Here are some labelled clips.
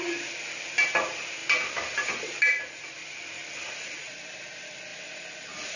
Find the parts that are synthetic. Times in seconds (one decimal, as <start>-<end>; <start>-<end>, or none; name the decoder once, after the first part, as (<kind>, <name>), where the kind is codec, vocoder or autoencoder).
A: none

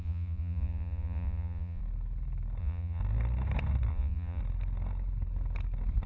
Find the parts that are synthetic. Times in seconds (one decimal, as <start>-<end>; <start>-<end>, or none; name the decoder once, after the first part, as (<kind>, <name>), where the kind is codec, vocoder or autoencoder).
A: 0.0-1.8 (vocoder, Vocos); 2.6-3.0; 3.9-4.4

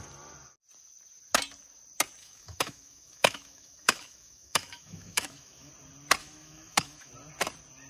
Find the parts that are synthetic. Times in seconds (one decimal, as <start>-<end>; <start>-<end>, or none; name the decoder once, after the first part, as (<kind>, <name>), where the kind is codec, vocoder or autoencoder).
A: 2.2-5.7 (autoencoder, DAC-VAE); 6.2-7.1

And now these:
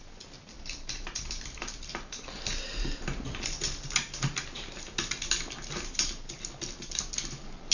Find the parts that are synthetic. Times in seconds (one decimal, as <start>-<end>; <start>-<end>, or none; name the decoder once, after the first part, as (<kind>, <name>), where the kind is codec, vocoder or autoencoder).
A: none